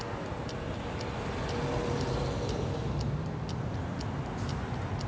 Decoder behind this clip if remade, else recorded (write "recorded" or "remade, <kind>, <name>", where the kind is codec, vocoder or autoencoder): recorded